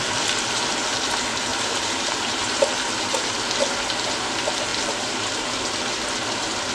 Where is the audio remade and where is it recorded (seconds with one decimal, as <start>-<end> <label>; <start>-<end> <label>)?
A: 0.0-1.5 recorded; 1.5-2.6 remade; 2.6-4.7 recorded; 4.7-5.3 remade; 5.3-6.7 recorded